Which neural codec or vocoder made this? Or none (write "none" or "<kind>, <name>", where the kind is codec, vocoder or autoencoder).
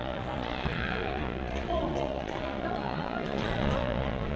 vocoder, Vocos